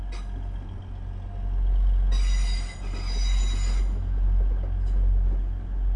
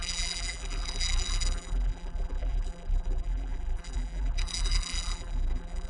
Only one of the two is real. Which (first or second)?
first